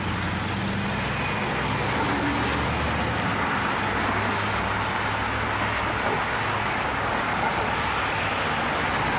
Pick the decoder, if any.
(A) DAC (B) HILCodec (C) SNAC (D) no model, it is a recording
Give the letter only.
D